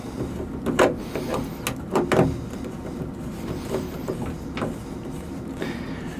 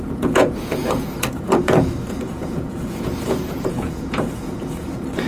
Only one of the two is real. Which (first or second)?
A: first